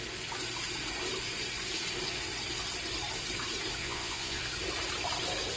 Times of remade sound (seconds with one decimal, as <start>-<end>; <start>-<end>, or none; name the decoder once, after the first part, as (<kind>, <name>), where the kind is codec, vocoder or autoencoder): 3.8-4.4 (vocoder, Vocos)